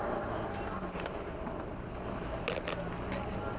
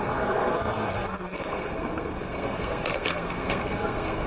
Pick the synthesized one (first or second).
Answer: second